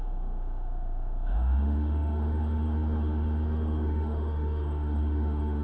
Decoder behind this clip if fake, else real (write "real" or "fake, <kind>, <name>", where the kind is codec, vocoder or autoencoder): fake, autoencoder, DAC-VAE